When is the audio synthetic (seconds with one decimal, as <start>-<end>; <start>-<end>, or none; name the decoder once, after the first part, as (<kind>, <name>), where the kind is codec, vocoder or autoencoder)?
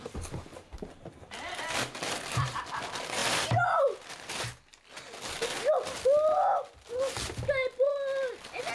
0.5-2.6 (vocoder, BigVGAN v2); 3.2-3.8